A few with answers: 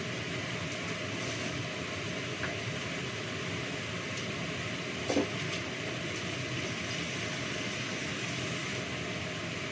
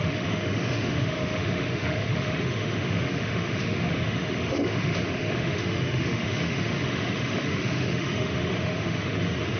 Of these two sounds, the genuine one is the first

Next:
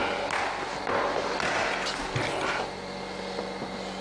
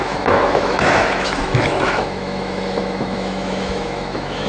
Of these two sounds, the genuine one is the first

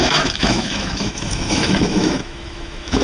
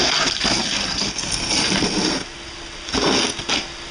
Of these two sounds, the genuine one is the second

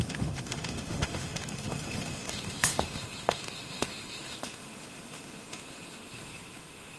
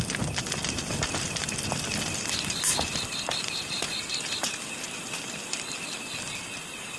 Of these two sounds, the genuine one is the second